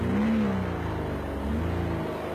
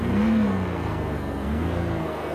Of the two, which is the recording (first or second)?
first